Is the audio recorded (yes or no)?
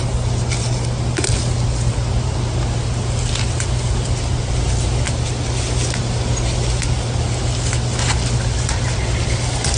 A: yes